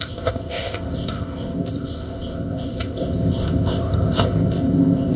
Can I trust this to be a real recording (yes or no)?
no